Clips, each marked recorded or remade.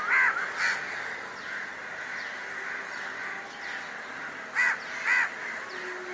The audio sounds recorded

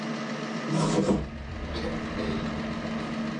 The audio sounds recorded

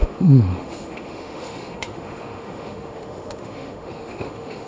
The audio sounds remade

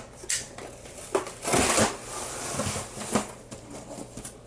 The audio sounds recorded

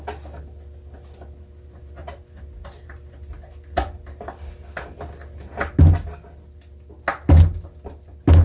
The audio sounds recorded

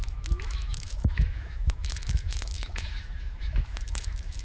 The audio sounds remade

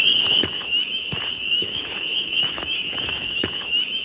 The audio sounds remade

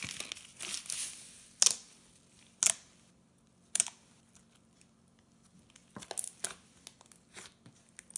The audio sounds recorded